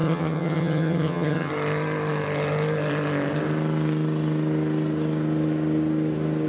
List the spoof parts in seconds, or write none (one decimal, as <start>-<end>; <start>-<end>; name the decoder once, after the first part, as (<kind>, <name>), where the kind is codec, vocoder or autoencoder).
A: 0.0-1.5 (vocoder, HiFi-GAN)